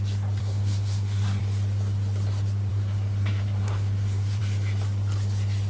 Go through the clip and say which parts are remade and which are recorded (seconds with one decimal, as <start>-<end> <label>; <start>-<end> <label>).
0.0-0.4 recorded; 0.4-1.4 remade; 1.4-2.7 recorded; 2.7-4.4 remade; 4.4-5.7 recorded